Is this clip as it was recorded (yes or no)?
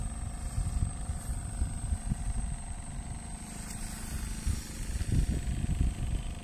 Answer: yes